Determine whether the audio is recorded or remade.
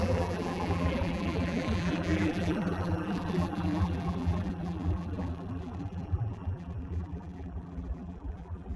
remade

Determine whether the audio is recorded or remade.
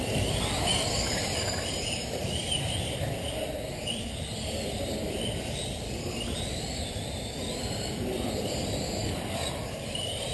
remade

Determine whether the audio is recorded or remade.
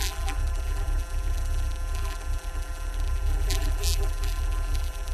remade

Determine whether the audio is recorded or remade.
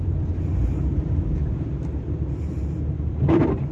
remade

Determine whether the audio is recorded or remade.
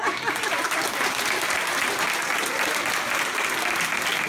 recorded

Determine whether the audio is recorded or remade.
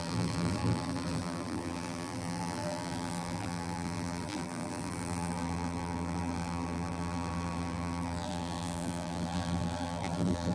remade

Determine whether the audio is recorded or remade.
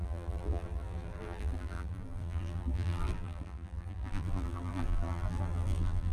remade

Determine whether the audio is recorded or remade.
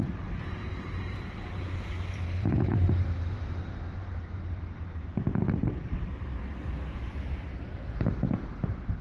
remade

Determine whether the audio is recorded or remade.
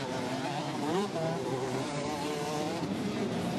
remade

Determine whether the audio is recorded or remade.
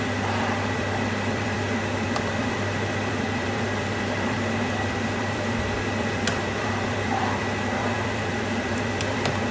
remade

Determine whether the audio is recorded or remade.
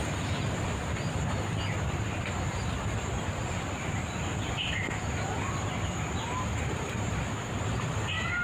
recorded